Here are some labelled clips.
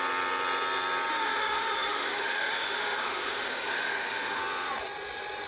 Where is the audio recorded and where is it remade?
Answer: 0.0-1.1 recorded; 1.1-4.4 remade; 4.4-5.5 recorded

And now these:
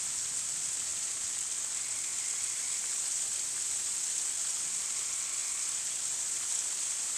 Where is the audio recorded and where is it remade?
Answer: 0.0-7.2 recorded